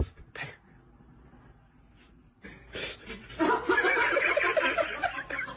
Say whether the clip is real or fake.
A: real